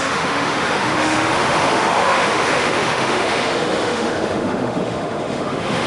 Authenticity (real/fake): fake